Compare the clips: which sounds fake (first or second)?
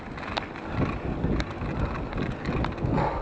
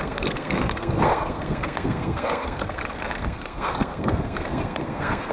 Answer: second